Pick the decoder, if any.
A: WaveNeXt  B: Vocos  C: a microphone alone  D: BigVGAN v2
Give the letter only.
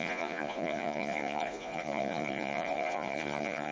B